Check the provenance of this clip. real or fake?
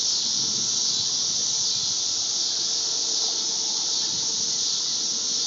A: fake